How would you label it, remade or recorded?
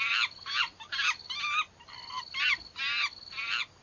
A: recorded